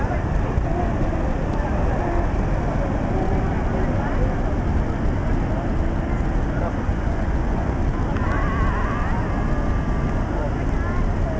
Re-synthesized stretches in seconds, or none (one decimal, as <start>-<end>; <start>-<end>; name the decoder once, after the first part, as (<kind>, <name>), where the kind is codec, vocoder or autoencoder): 6.9-7.8 (vocoder, Vocos)